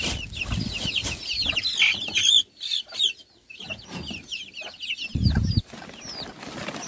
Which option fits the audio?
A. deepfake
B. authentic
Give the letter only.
B